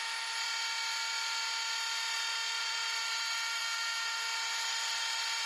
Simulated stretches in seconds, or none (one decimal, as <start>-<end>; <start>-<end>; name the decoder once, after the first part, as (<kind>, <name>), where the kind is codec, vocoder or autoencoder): 0.0-0.5 (vocoder, BigVGAN v2); 2.6-3.6; 4.9-5.5